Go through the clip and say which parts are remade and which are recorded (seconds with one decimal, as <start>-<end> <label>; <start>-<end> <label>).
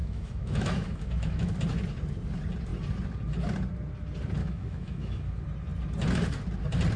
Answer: 0.0-1.5 remade; 1.5-4.4 recorded; 4.4-5.3 remade; 5.3-7.0 recorded